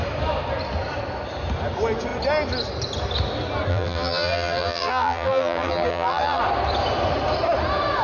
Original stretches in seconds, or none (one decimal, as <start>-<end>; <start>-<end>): 0.0-3.7; 6.4-8.0

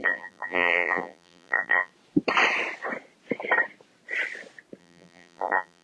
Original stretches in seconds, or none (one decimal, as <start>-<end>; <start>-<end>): 1.9-4.8

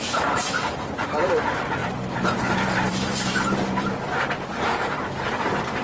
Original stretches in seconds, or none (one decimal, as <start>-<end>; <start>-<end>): none

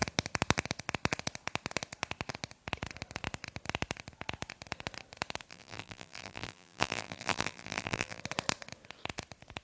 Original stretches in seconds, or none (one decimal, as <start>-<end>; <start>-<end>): 0.0-5.5; 8.2-9.6